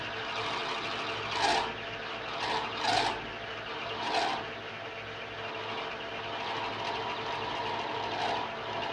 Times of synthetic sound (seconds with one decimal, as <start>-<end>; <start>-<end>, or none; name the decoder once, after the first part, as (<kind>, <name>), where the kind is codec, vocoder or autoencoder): none